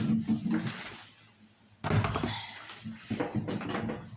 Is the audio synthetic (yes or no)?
no